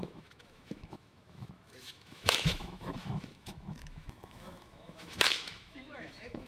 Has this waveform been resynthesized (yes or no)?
yes